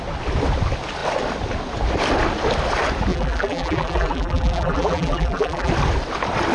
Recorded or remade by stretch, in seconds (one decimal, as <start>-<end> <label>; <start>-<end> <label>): 0.0-3.1 recorded; 3.1-5.7 remade; 5.7-6.5 recorded